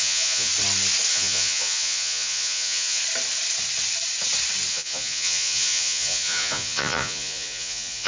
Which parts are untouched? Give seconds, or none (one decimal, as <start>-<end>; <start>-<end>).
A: 0.5-1.1; 3.0-4.7